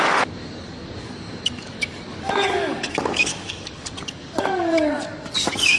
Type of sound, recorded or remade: remade